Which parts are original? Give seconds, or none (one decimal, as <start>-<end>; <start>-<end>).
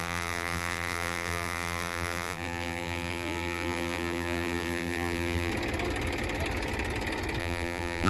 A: 5.5-7.4